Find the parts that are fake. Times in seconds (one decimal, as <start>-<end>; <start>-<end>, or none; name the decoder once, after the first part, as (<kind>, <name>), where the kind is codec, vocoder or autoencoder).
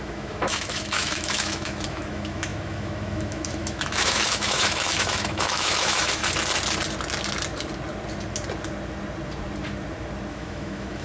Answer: 0.0-6.2 (autoencoder, DAC-VAE); 10.3-11.0